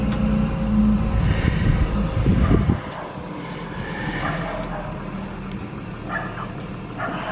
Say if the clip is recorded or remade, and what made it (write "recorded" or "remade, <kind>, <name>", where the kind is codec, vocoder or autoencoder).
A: recorded